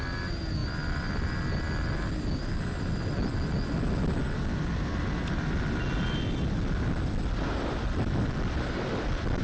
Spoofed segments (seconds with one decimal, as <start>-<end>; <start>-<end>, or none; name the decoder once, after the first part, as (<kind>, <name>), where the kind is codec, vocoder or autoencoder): none